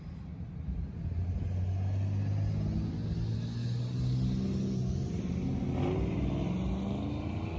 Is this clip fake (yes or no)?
no